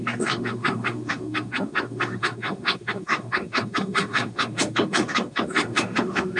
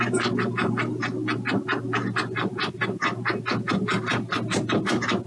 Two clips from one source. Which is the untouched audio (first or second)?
second